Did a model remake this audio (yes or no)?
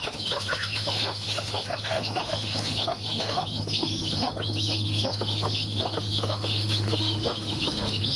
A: yes